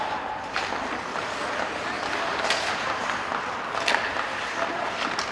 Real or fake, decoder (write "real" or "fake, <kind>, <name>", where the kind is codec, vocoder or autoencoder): real